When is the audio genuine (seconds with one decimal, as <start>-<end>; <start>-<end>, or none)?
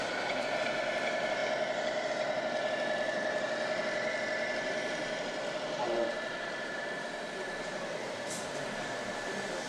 none